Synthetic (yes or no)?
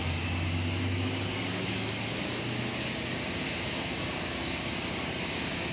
yes